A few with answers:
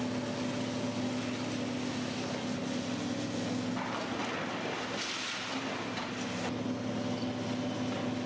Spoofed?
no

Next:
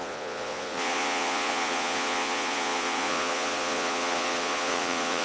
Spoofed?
yes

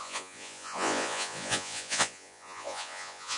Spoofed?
yes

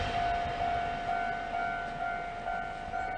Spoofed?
no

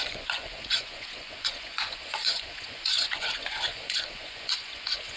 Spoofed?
yes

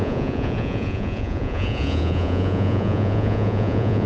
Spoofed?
yes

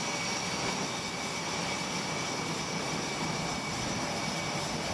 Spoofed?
no